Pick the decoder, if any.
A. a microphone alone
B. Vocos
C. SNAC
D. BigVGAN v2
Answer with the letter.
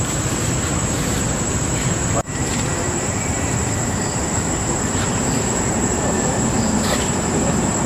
D